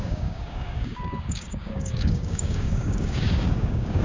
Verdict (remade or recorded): remade